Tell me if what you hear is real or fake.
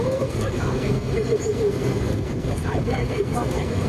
fake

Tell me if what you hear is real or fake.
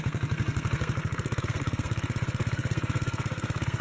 fake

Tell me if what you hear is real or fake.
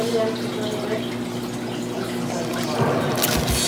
real